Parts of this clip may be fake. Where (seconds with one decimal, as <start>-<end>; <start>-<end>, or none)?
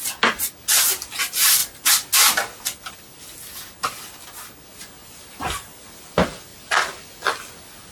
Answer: none